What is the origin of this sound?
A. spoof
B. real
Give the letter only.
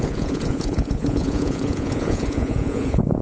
A